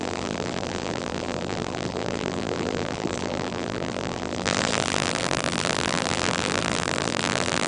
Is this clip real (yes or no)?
no